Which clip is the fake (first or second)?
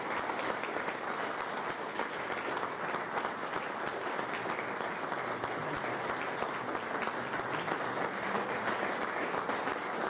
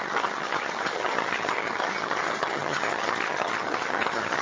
second